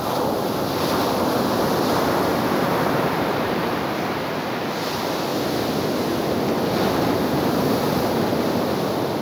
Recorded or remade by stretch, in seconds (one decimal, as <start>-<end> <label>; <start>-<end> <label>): 0.0-2.3 recorded; 2.3-4.2 remade; 4.2-9.2 recorded